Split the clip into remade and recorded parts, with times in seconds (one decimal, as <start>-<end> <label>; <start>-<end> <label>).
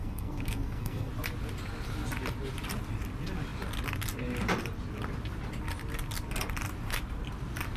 0.0-1.1 remade; 1.1-7.8 recorded